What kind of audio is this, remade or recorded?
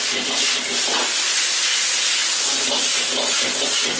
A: recorded